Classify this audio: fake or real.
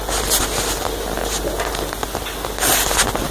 real